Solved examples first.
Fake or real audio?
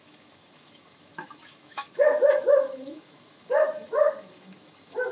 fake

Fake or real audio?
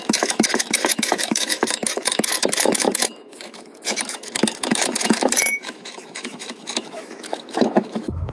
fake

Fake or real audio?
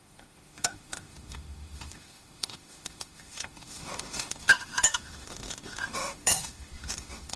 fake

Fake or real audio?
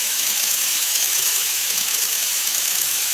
fake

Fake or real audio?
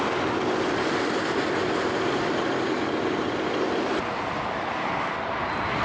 real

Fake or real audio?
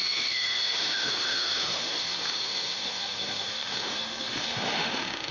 fake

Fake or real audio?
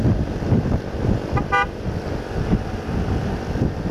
real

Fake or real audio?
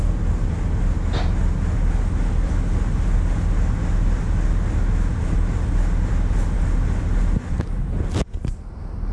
real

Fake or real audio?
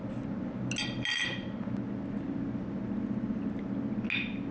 real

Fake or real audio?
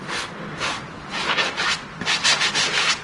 real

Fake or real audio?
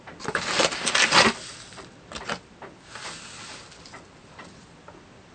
real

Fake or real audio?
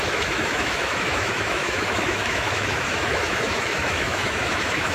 fake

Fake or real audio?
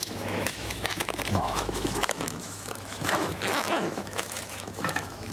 fake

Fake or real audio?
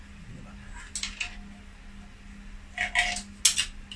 real